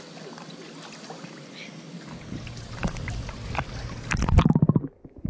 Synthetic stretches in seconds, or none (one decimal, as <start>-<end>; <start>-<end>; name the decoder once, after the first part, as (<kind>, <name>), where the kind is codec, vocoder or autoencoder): none